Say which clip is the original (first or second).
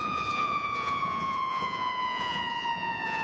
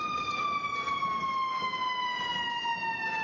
second